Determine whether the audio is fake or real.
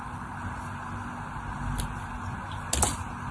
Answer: real